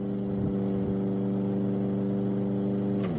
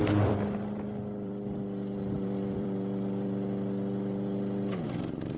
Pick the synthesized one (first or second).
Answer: second